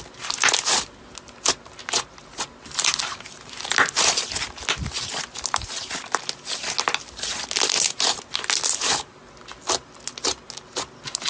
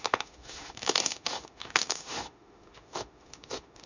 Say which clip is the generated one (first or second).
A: second